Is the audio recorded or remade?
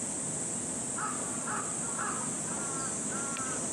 recorded